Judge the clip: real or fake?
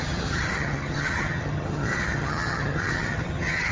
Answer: fake